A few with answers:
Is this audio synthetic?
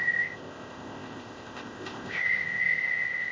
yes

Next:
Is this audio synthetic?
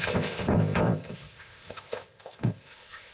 yes